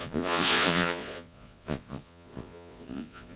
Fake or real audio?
fake